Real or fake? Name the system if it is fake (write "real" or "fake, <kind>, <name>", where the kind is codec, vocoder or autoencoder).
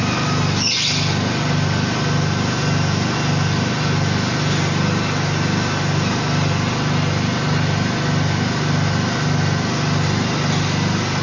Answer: real